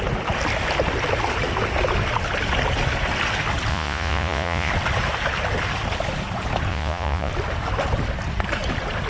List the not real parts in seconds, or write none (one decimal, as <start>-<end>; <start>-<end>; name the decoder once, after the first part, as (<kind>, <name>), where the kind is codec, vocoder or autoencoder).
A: 3.7-4.7 (vocoder, Vocos); 6.7-7.3